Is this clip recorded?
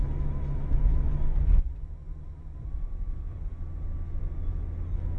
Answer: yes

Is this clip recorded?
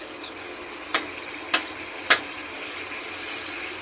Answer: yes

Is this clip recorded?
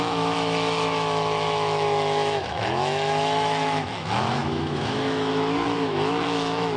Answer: no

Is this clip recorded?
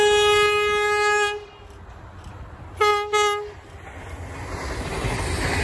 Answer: yes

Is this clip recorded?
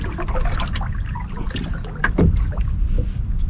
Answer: no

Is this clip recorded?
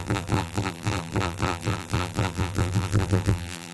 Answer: no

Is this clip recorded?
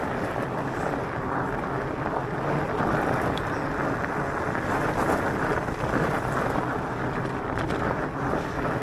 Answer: yes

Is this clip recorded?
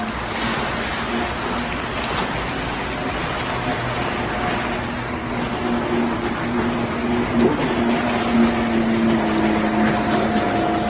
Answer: yes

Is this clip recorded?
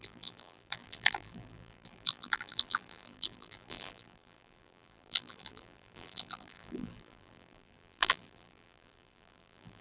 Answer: no